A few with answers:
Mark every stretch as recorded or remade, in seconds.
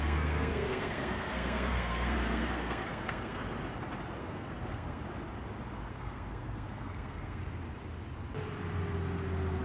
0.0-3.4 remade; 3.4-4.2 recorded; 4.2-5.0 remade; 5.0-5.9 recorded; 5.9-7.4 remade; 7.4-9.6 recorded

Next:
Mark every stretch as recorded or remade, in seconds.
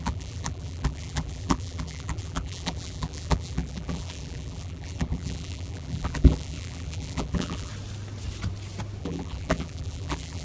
0.0-7.7 remade; 7.7-9.0 recorded; 9.0-10.4 remade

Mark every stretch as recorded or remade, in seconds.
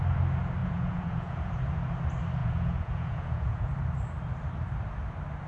0.0-0.6 recorded; 0.6-1.7 remade; 1.7-2.4 recorded; 2.4-3.7 remade; 3.7-5.5 recorded